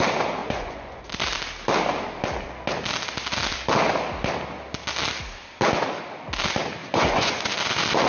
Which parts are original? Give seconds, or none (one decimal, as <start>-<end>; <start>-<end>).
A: 0.0-0.4; 1.0-6.8; 7.5-8.1